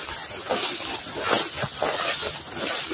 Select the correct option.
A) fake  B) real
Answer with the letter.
B